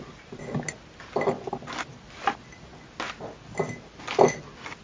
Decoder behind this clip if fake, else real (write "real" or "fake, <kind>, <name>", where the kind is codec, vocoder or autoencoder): real